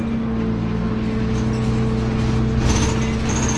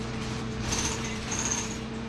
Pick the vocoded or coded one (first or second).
second